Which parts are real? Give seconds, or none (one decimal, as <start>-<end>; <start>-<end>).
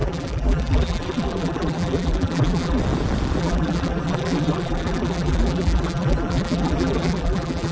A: 2.8-3.4